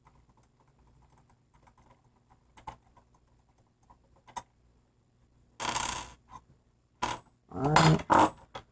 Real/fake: real